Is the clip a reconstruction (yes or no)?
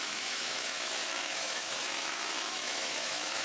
yes